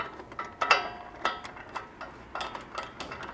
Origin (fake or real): real